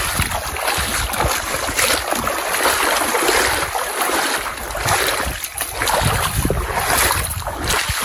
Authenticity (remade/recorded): recorded